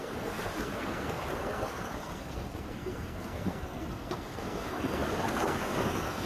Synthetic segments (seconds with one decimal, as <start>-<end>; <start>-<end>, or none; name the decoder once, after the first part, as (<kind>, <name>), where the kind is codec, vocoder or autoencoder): 0.0-6.3 (codec, SNAC)